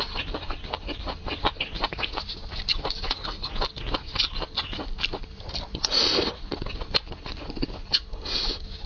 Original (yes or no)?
yes